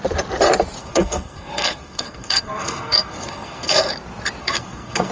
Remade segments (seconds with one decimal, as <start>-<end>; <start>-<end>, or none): 0.8-3.9; 4.4-5.1